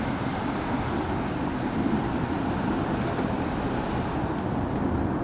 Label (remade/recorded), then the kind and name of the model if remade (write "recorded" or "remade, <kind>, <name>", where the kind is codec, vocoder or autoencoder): recorded